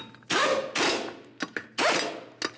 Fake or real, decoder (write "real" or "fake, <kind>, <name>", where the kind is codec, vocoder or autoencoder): real